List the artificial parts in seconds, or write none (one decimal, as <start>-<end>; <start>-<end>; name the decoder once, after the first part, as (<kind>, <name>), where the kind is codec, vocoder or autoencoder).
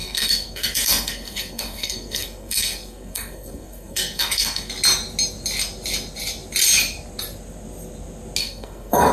0.0-4.7 (codec, SNAC); 8.4-9.1